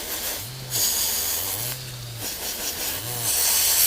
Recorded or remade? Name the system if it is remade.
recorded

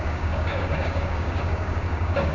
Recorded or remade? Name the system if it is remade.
remade, codec, DAC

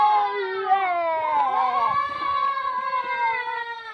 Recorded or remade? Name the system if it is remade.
recorded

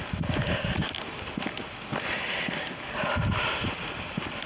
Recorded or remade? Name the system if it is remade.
recorded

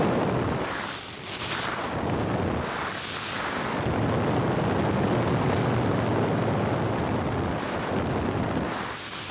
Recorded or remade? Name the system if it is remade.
remade, vocoder, BigVGAN v2